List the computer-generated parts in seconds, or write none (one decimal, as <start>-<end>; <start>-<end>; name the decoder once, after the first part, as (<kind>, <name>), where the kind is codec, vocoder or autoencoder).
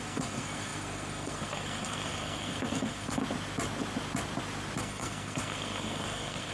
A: 0.0-3.2 (codec, SNAC); 4.8-6.5